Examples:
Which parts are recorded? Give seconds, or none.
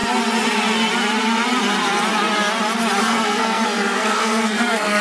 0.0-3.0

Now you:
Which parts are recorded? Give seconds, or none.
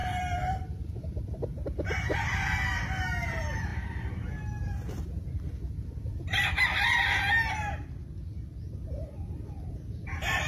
1.2-10.5